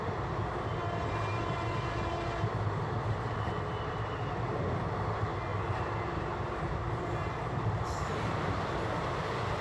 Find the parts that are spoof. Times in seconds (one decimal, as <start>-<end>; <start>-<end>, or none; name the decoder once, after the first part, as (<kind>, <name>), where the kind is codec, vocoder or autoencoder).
1.3-3.5 (vocoder, BigVGAN v2); 5.5-6.2; 6.8-9.2